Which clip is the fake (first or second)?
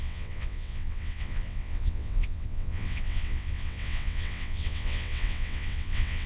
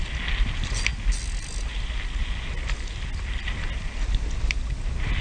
first